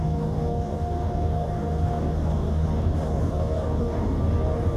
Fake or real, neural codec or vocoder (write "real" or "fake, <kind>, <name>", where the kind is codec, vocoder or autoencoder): fake, codec, DAC